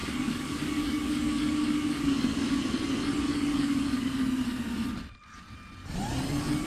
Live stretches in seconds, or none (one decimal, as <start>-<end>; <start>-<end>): 2.6-3.3; 4.1-6.7